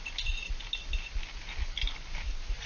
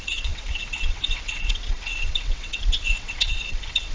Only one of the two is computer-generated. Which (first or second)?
second